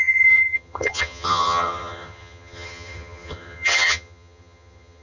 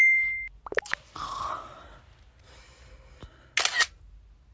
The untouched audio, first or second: second